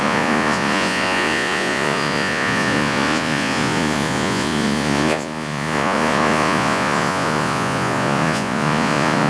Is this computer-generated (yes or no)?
yes